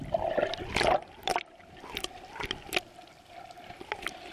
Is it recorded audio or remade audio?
recorded